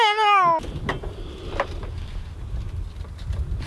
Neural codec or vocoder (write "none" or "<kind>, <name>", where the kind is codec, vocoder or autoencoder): none